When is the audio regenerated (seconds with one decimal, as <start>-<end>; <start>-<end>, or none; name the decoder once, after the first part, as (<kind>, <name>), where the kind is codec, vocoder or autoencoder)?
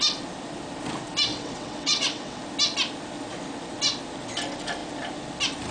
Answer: 1.3-2.4 (vocoder, WaveNeXt)